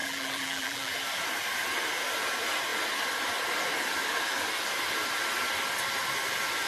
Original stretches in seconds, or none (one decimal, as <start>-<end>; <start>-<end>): 0.9-6.7